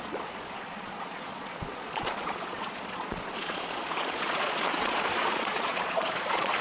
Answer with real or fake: fake